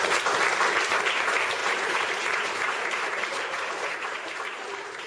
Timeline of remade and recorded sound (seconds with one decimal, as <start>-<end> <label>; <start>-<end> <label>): 0.0-1.6 recorded; 1.6-5.1 remade